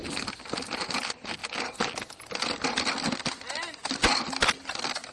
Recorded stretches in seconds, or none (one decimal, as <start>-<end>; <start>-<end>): 0.0-5.1